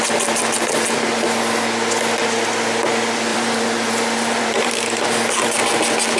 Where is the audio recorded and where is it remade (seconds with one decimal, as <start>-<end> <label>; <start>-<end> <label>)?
0.0-3.3 recorded; 3.3-4.7 remade; 4.7-6.2 recorded